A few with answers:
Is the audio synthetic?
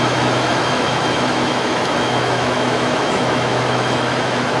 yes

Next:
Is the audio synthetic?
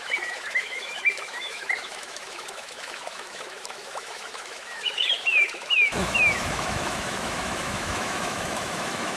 yes